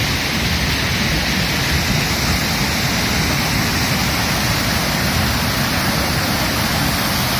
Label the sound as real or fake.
real